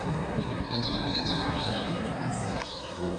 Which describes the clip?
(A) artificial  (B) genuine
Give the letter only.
A